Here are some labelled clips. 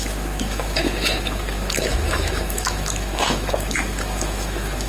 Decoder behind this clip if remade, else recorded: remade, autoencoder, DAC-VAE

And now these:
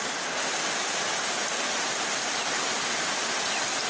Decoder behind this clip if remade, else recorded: recorded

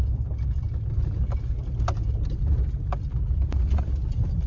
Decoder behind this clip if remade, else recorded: recorded